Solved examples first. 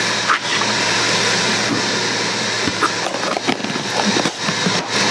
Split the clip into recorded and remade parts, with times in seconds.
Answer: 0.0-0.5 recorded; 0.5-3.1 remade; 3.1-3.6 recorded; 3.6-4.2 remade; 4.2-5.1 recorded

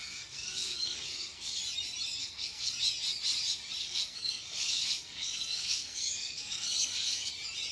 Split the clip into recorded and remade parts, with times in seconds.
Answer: 0.0-1.6 remade; 1.6-2.2 recorded; 2.2-2.7 remade; 2.7-3.8 recorded; 3.8-7.3 remade; 7.3-7.7 recorded